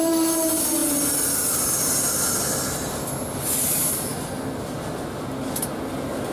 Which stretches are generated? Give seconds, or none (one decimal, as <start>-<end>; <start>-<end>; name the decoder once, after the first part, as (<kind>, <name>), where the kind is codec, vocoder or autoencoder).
none